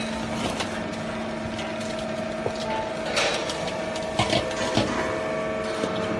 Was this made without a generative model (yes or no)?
yes